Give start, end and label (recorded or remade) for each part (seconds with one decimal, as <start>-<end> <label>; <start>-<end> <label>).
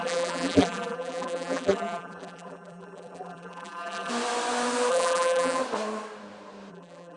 0.0-4.1 remade; 4.1-4.9 recorded; 4.9-5.6 remade; 5.6-6.7 recorded; 6.7-7.2 remade